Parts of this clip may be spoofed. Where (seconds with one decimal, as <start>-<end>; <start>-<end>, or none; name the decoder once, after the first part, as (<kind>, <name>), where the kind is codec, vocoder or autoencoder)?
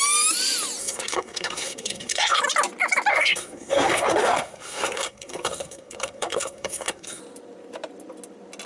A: 0.8-2.4 (codec, SNAC); 3.1-7.2